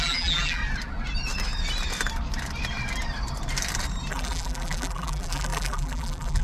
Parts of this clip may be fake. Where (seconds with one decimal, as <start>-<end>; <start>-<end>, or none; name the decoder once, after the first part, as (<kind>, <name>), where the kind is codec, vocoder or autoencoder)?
0.0-0.6 (vocoder, BigVGAN v2); 4.1-6.4

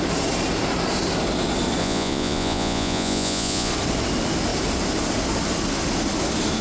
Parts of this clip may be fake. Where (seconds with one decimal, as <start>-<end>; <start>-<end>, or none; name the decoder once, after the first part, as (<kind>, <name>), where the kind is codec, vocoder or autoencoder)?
1.8-3.7 (vocoder, Vocos)

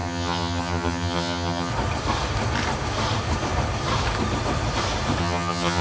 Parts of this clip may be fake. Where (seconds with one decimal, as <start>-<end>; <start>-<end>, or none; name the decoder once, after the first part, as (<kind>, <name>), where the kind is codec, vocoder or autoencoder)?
0.0-1.7 (vocoder, HiFi-GAN); 5.2-5.8

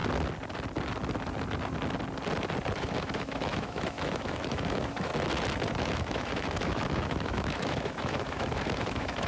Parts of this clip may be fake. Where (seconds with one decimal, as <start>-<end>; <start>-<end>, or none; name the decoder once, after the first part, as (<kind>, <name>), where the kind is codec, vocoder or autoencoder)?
2.8-5.1 (autoencoder, DAC-VAE); 5.8-9.3